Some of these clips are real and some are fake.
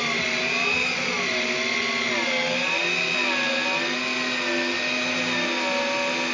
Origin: real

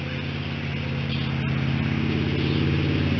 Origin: real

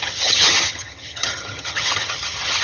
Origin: fake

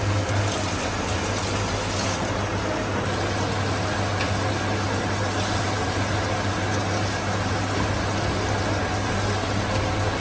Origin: real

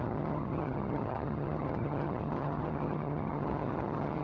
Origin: fake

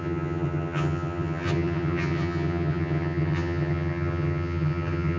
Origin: fake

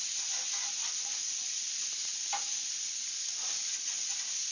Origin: real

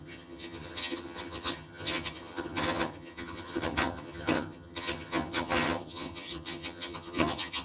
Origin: fake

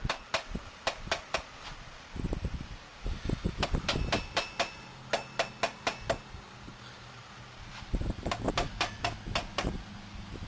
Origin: real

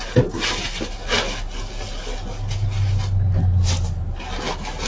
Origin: real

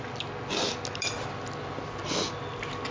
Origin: real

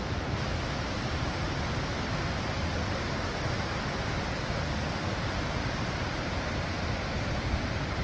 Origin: real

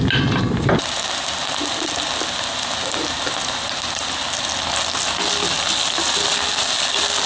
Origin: real